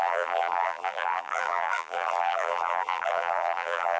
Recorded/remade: remade